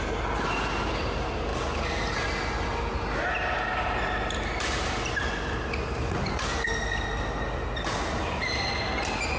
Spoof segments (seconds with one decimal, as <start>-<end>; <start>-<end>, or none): none